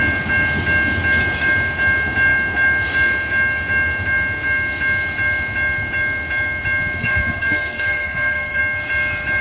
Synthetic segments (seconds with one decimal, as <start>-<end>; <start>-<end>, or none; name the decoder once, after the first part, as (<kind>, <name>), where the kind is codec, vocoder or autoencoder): 7.0-8.6 (codec, SNAC)